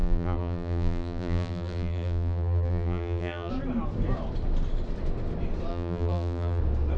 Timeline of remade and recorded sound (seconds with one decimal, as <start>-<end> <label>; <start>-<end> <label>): 0.0-3.5 remade; 3.5-5.7 recorded; 5.7-6.6 remade; 6.6-7.0 recorded